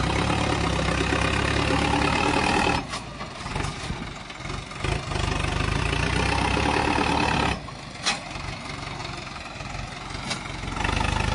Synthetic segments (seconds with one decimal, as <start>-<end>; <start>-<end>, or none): none